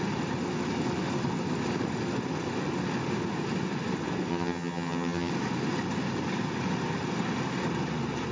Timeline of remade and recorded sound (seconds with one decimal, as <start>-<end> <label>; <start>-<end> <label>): 0.0-4.3 recorded; 4.3-5.3 remade; 5.3-8.3 recorded